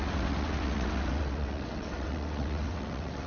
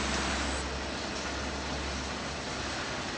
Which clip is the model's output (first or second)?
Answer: first